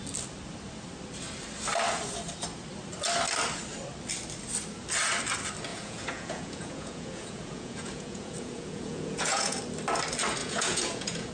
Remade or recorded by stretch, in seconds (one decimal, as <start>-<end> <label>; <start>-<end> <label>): 0.0-5.7 recorded; 5.7-9.6 remade; 9.6-10.4 recorded; 10.4-11.3 remade